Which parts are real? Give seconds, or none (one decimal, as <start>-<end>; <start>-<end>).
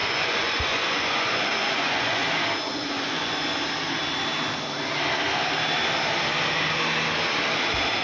2.2-2.7; 3.5-8.0